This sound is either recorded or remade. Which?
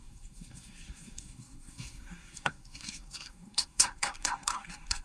remade